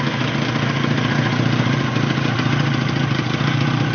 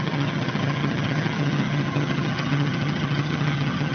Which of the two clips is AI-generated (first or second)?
second